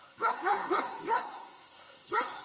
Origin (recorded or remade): remade